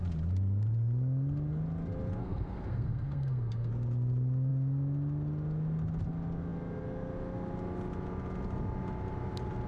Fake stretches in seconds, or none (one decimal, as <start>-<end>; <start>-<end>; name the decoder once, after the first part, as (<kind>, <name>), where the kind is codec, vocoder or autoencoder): 2.2-3.7 (codec, SNAC)